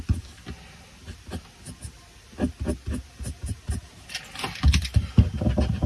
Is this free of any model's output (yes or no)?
yes